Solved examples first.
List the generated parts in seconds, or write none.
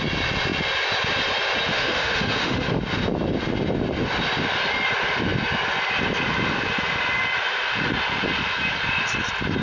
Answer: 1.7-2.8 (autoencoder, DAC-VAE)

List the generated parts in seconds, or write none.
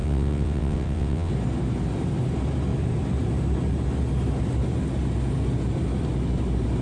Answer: 0.0-1.3 (vocoder, WaveNeXt)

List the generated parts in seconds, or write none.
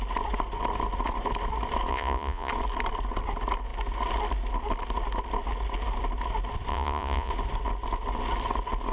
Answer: 1.9-2.5 (vocoder, Vocos); 6.7-7.3